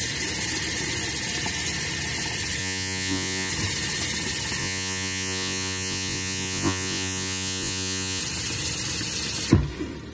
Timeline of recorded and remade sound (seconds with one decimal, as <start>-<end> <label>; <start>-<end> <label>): 0.0-2.6 recorded; 2.6-3.5 remade; 3.5-4.6 recorded; 4.6-8.2 remade; 8.2-10.1 recorded